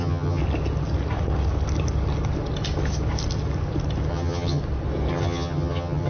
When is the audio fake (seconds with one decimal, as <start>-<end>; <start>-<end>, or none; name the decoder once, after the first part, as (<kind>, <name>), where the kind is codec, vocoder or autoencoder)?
0.0-0.4 (vocoder, HiFi-GAN); 4.1-4.6; 5.1-6.1